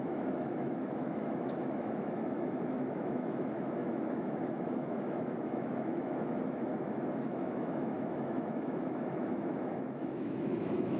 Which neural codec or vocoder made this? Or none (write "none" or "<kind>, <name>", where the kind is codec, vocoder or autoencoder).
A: autoencoder, DAC-VAE